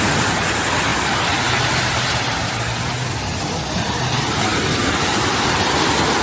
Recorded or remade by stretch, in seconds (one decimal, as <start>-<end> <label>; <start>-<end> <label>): 0.0-0.9 recorded; 0.9-2.0 remade; 2.0-6.2 recorded